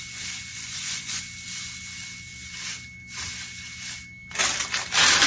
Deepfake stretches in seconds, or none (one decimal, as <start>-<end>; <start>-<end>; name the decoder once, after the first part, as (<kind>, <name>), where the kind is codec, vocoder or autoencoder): 0.5-1.2 (vocoder, Vocos)